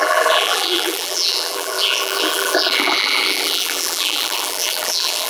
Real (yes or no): no